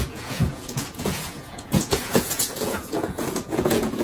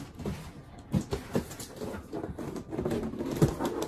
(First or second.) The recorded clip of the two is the second